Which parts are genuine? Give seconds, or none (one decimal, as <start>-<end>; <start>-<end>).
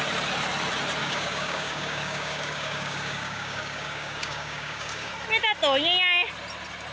0.0-1.0; 5.1-6.9